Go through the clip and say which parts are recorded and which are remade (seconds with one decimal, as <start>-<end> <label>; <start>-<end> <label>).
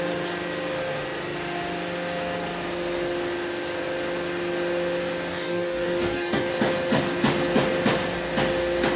0.0-5.3 recorded; 5.3-6.5 remade; 6.5-9.0 recorded